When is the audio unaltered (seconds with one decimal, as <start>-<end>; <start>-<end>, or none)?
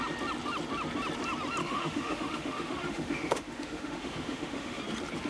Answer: 0.0-1.6; 4.8-5.3